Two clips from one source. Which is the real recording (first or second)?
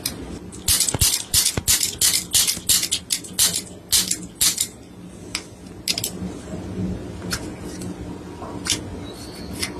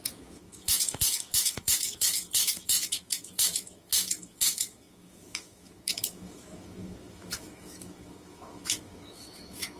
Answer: first